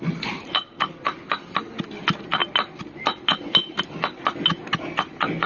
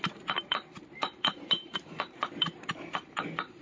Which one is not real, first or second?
second